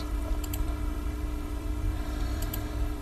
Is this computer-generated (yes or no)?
yes